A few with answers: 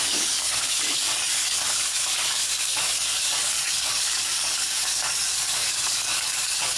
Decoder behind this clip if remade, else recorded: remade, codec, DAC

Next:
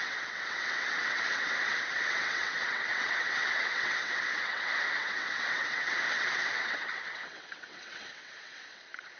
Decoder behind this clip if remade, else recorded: remade, vocoder, WaveNeXt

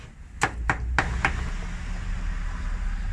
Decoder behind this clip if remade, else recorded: recorded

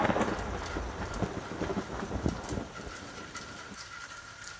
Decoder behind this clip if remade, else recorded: remade, vocoder, BigVGAN v2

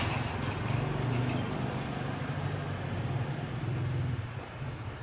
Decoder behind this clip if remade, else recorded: recorded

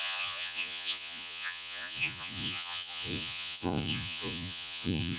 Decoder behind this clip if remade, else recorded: remade, vocoder, Vocos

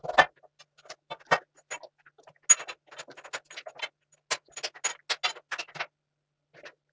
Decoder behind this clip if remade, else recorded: recorded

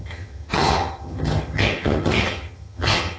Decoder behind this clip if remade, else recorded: remade, vocoder, HiFi-GAN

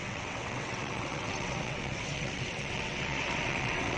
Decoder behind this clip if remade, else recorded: remade, vocoder, WaveNeXt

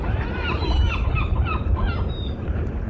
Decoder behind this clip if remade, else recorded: remade, vocoder, BigVGAN v2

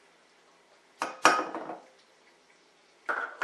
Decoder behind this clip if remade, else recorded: recorded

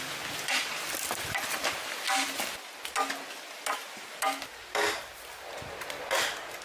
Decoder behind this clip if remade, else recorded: recorded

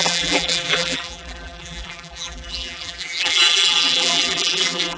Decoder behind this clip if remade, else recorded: remade, vocoder, BigVGAN v2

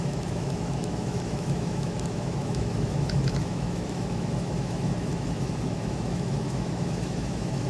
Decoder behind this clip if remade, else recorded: remade, autoencoder, DAC-VAE